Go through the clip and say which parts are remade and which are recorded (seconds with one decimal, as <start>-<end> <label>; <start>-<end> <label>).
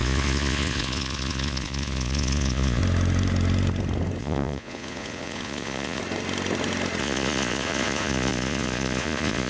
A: 0.0-2.8 remade; 2.8-4.2 recorded; 4.2-6.0 remade; 6.0-7.0 recorded; 7.0-9.5 remade